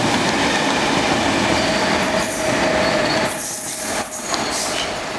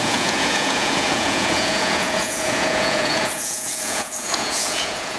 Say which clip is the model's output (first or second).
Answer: second